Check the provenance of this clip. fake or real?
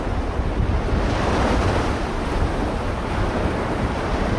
real